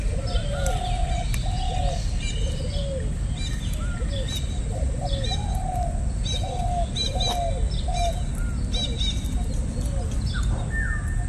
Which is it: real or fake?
real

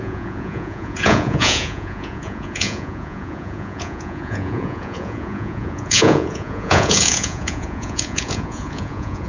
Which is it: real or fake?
fake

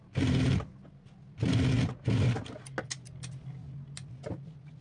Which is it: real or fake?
real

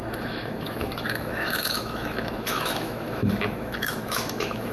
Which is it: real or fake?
fake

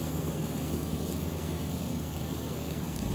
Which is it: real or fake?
fake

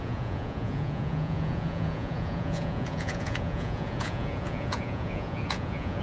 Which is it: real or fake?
fake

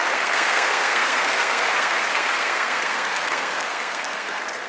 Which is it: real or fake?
fake